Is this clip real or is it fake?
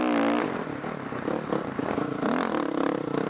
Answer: real